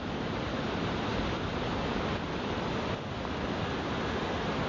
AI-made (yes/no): no